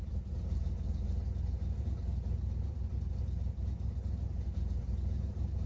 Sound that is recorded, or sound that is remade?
recorded